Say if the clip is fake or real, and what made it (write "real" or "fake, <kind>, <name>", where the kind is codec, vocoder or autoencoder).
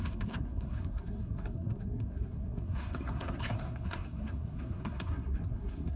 fake, codec, SNAC